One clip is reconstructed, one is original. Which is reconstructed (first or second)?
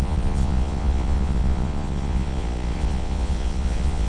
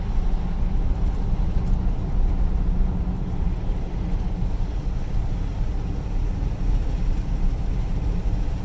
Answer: first